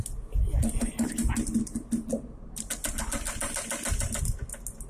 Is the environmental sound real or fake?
real